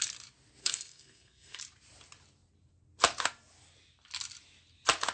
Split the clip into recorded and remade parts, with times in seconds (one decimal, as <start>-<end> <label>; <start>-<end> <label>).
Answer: 0.0-0.6 recorded; 0.6-1.6 remade; 1.6-5.1 recorded